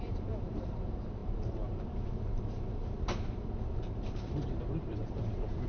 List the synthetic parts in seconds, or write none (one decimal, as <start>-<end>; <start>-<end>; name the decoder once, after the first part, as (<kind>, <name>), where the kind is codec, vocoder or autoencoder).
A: 0.0-5.7 (vocoder, BigVGAN v2)